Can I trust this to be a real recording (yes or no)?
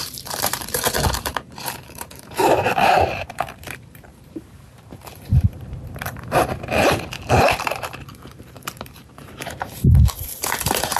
no